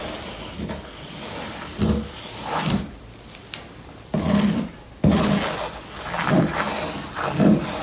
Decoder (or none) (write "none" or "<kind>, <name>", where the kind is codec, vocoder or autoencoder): none